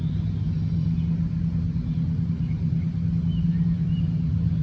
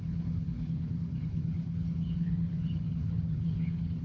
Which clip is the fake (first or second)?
second